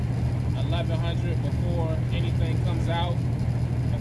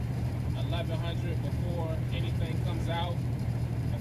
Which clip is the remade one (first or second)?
second